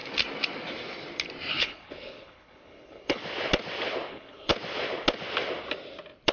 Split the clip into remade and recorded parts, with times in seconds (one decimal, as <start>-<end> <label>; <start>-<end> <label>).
0.0-1.5 recorded; 1.5-3.2 remade; 3.2-4.1 recorded; 4.1-4.5 remade; 4.5-6.3 recorded